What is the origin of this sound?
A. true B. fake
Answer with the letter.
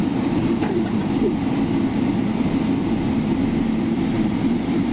B